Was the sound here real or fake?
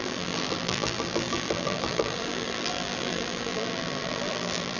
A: fake